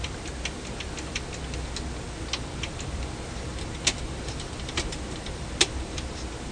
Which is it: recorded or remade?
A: recorded